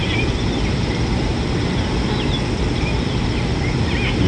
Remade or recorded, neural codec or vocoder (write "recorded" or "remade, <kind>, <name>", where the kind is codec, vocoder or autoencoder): recorded